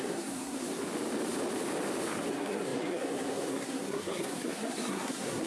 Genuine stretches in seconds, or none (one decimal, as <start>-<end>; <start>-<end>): 0.7-2.3